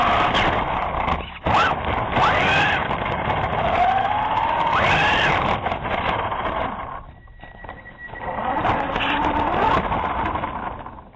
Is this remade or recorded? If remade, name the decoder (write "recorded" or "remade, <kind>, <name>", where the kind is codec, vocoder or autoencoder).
recorded